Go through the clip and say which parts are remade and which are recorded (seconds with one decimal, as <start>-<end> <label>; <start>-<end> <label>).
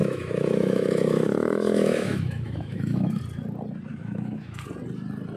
0.0-3.2 remade; 3.2-3.9 recorded; 3.9-4.6 remade; 4.6-5.4 recorded